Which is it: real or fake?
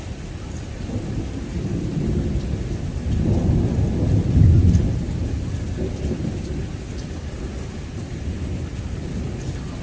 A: real